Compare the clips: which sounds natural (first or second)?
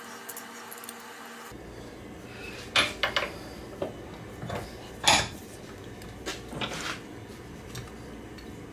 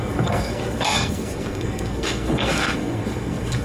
first